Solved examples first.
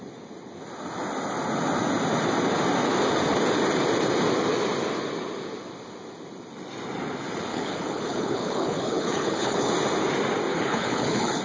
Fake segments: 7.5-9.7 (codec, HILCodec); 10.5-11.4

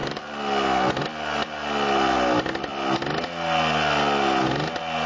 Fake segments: none

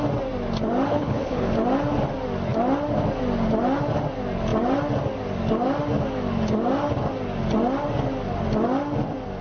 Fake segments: 0.9-1.5 (codec, HILCodec)

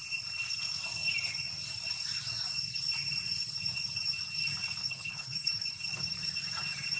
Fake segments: 4.8-5.8 (codec, HILCodec)

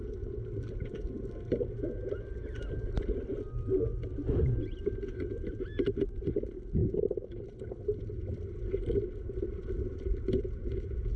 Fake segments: none

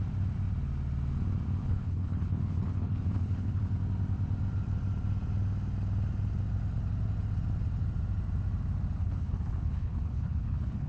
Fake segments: 1.6-3.6 (codec, HILCodec); 9.0-10.9

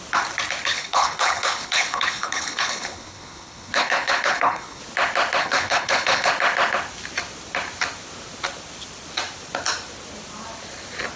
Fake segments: 0.7-4.8 (codec, HILCodec); 5.4-6.3

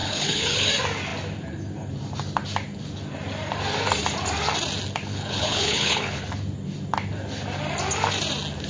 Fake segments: 0.0-0.7 (codec, HILCodec); 5.1-6.2